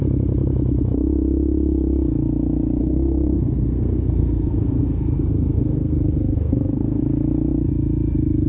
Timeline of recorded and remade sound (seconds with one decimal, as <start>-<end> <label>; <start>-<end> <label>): 0.0-2.8 recorded; 2.8-7.0 remade; 7.0-8.5 recorded